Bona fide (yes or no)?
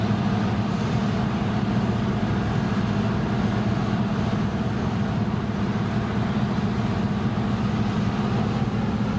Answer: yes